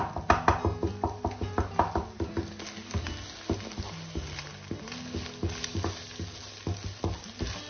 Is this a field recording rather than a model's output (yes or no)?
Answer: yes